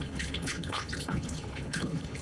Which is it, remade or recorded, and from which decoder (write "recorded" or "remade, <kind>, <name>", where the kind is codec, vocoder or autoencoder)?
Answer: remade, codec, HILCodec